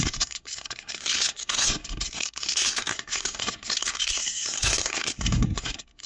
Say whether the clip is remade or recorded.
remade